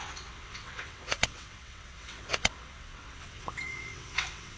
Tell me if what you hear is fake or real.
fake